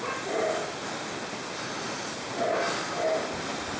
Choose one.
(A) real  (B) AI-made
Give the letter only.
A